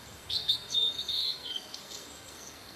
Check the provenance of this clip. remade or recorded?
remade